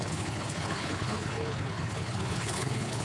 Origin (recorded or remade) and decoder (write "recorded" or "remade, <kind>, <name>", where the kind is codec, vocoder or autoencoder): remade, codec, HILCodec